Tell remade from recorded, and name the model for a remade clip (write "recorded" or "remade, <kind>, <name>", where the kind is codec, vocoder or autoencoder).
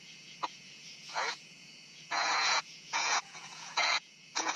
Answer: remade, vocoder, Vocos